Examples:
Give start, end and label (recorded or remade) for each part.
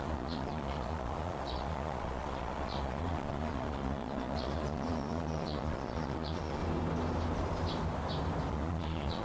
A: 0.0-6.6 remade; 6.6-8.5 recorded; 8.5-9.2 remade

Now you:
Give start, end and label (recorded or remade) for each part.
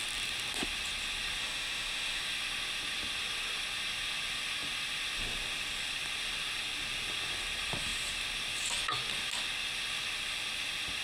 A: 0.0-1.4 recorded; 1.4-2.2 remade; 2.2-11.0 recorded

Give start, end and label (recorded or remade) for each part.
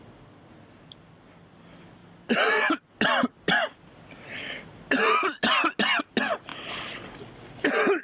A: 0.0-8.0 recorded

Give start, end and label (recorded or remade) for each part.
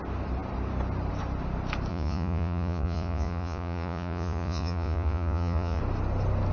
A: 0.0-1.9 recorded; 1.9-5.8 remade; 5.8-6.5 recorded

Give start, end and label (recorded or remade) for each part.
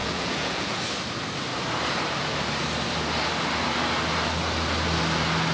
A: 0.0-0.8 remade; 0.8-5.5 recorded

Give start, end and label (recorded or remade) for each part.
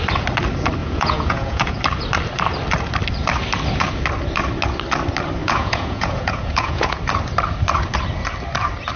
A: 0.0-0.8 recorded; 0.8-1.8 remade; 1.8-5.4 recorded; 5.4-7.0 remade; 7.0-9.0 recorded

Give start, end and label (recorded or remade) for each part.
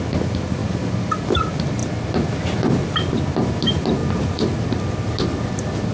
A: 0.0-4.0 recorded; 4.0-5.1 remade; 5.1-5.9 recorded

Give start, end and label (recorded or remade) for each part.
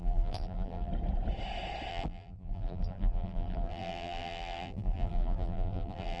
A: 0.0-0.9 remade; 0.9-1.9 recorded; 1.9-6.2 remade